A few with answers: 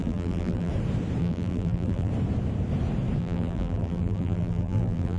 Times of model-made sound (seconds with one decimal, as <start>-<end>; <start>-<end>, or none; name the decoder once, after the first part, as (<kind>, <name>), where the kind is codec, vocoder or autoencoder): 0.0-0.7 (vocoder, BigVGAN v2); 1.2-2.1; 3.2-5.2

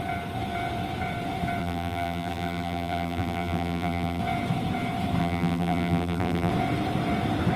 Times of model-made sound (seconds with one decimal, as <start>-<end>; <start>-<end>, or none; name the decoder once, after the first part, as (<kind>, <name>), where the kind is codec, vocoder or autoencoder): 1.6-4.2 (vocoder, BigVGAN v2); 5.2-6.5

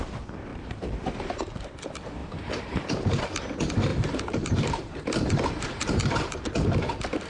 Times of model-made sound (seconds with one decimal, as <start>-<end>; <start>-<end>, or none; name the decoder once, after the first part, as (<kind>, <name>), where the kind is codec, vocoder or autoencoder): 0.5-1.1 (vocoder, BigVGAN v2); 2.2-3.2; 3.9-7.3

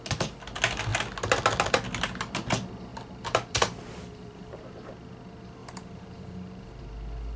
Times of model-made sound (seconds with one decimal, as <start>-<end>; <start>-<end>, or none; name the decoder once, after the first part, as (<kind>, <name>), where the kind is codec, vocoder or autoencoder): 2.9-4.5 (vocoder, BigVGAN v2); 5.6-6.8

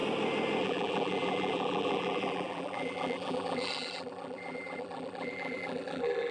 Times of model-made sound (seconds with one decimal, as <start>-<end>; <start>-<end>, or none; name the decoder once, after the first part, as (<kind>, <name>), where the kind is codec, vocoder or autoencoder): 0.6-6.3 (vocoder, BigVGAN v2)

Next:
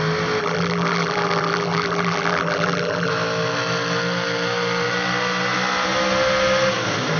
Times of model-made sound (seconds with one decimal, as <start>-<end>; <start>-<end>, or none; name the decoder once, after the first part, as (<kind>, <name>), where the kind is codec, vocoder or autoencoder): 0.4-3.1 (vocoder, BigVGAN v2)